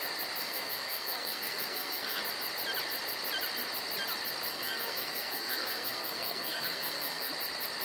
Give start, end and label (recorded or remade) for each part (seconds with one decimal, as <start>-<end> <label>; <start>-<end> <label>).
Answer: 0.0-0.4 recorded; 0.4-2.2 remade; 2.2-4.5 recorded; 4.5-7.3 remade; 7.3-7.8 recorded